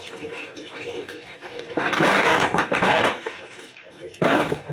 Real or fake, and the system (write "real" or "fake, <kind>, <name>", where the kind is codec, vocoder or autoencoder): fake, codec, DAC